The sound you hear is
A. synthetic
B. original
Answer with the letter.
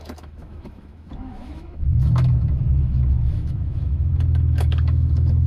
A